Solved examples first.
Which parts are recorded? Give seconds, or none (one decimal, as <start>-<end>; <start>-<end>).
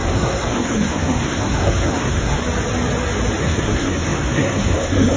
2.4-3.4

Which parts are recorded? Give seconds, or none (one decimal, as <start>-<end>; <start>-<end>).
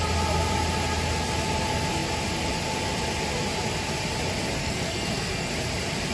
0.0-4.6; 5.5-6.1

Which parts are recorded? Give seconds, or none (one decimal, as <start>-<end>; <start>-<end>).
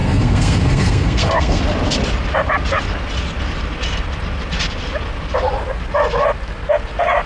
1.6-7.3